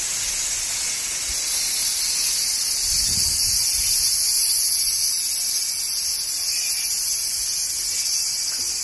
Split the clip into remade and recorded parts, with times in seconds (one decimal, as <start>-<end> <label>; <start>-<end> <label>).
0.0-8.8 recorded

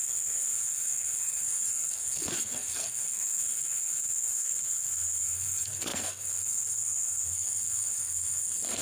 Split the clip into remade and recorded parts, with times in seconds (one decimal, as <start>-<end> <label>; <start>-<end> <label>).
0.0-8.8 remade